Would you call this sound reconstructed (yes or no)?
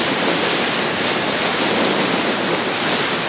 no